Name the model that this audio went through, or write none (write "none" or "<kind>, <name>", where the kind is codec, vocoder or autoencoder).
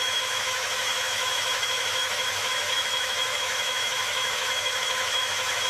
autoencoder, DAC-VAE